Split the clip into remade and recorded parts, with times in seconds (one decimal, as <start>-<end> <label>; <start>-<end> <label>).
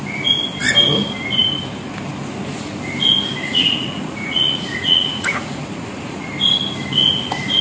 0.0-3.5 recorded; 3.5-6.3 remade; 6.3-7.6 recorded